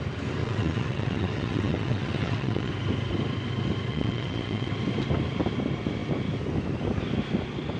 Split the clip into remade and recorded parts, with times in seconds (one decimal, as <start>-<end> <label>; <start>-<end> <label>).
0.0-0.4 recorded; 0.4-2.7 remade; 2.7-3.9 recorded; 3.9-4.7 remade; 4.7-7.8 recorded